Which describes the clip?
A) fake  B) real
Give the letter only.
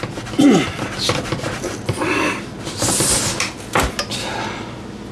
B